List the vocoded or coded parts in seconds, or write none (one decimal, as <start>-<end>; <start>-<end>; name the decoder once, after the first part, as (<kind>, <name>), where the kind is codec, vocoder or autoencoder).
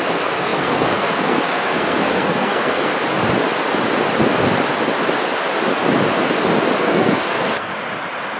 0.0-2.9 (codec, SNAC); 6.8-7.7